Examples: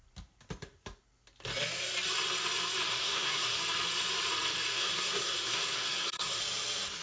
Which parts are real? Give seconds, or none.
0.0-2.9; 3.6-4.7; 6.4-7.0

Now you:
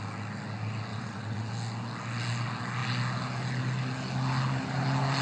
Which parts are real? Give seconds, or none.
0.0-0.9; 1.5-5.2